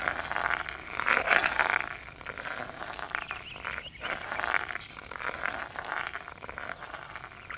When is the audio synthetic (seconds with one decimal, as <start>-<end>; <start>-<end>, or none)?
none